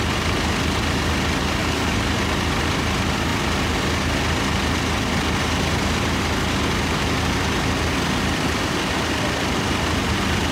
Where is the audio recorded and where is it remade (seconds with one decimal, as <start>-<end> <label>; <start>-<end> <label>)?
0.0-1.6 recorded; 1.6-2.2 remade; 2.2-10.5 recorded